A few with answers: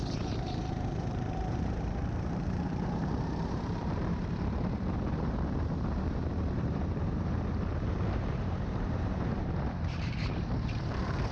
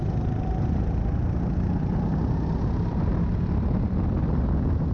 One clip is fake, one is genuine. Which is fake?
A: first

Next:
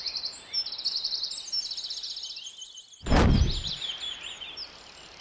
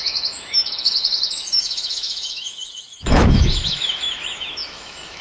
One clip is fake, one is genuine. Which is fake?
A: second